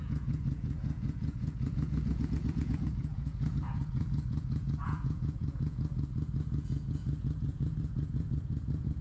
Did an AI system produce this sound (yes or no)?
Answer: yes